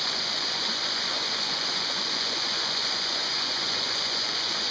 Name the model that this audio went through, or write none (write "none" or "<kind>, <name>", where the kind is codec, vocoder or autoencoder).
vocoder, Vocos